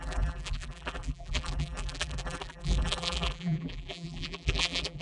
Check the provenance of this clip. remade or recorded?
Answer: remade